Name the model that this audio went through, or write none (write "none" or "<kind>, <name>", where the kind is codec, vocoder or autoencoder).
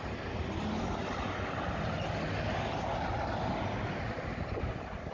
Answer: none